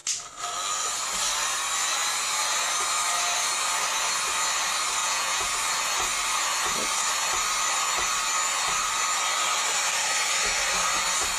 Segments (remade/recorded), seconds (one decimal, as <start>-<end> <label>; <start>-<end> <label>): 0.0-5.0 recorded; 5.0-5.5 remade; 5.5-11.4 recorded